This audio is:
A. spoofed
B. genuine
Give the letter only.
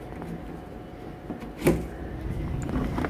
B